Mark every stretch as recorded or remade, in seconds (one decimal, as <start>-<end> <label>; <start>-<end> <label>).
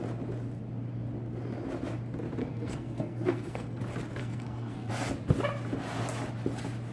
0.0-2.4 recorded; 2.4-3.8 remade; 3.8-4.2 recorded; 4.2-4.9 remade; 4.9-6.9 recorded